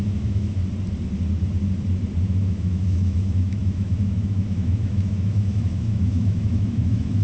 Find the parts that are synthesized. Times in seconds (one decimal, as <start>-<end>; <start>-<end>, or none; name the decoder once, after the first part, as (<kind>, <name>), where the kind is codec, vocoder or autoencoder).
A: 0.0-0.6 (autoencoder, DAC-VAE); 2.2-7.2